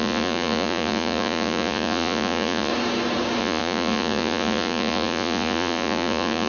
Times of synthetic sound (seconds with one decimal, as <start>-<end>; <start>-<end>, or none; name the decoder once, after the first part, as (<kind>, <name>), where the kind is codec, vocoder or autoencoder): 0.0-2.7 (vocoder, Vocos); 3.4-6.5